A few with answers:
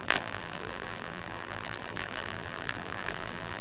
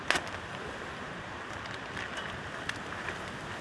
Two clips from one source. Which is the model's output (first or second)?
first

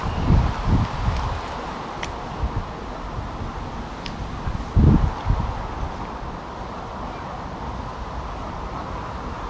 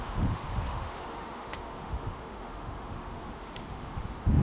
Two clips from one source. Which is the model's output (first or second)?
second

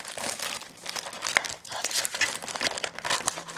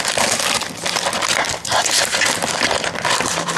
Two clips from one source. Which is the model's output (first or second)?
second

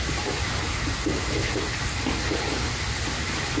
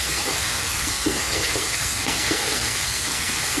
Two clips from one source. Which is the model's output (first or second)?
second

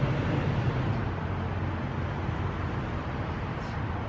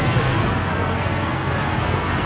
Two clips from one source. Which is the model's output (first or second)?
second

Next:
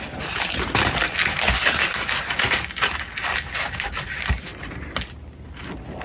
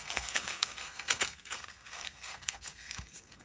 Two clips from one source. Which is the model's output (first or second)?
second